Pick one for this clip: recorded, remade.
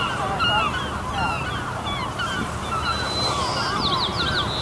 recorded